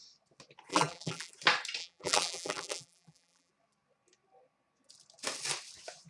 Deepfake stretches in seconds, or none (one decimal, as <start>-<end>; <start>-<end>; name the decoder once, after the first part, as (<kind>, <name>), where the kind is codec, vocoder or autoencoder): 0.7-1.3 (vocoder, BigVGAN v2); 1.8-3.5